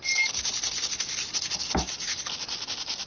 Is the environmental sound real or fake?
real